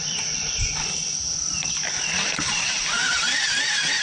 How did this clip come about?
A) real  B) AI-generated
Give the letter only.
A